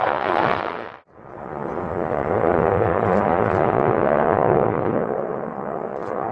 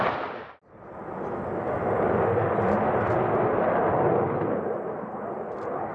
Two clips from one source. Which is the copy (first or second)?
first